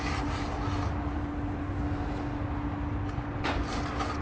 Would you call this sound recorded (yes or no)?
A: yes